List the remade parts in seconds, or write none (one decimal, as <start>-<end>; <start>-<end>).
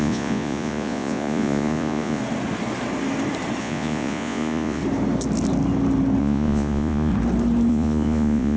0.0-2.2; 3.6-4.8; 6.2-7.1; 7.7-8.6